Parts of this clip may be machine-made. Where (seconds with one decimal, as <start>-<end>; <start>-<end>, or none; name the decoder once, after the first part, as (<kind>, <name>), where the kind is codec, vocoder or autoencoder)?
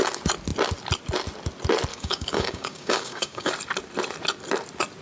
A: 1.9-3.5 (codec, DAC)